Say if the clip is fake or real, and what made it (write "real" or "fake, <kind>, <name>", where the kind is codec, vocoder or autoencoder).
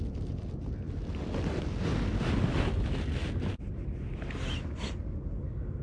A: real